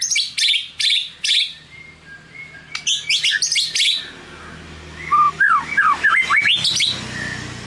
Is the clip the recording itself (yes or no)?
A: yes